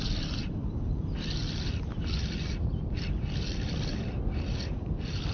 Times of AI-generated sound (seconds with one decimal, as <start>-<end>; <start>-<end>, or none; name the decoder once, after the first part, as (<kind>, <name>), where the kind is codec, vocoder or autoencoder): none